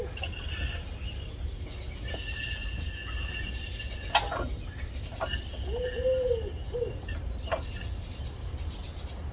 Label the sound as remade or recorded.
recorded